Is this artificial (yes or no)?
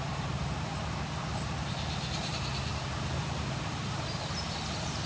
no